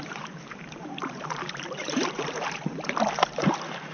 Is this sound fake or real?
fake